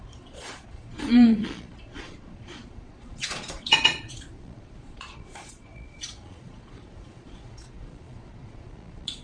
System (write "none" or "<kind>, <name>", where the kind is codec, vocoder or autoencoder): vocoder, Vocos